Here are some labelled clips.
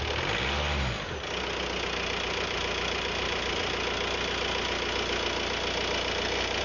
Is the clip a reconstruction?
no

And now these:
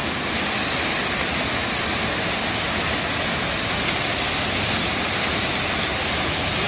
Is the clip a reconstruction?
no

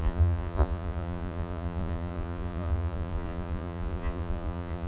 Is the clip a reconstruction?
yes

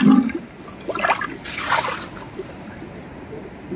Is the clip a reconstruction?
no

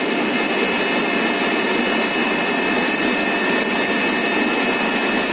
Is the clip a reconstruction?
no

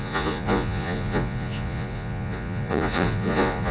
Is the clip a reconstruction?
yes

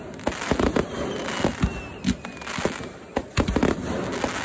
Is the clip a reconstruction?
no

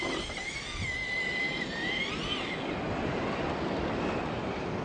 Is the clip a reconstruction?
no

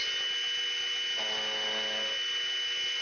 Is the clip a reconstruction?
no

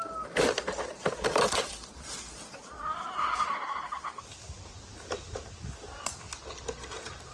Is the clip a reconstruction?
no